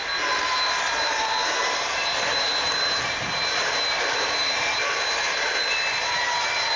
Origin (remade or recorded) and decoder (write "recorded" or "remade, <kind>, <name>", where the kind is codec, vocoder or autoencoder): remade, vocoder, BigVGAN v2